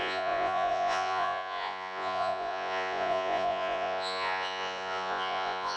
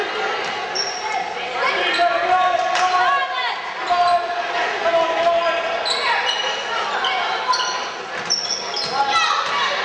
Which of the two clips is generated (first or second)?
first